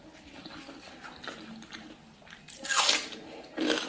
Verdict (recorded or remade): recorded